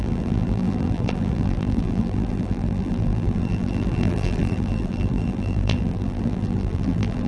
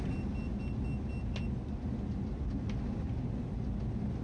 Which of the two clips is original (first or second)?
second